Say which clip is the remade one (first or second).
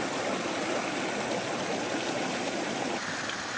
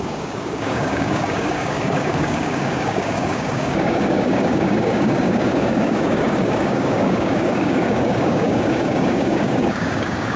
second